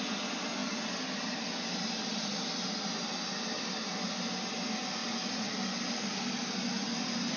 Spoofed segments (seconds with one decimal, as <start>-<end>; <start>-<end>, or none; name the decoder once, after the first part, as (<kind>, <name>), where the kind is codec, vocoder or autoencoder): none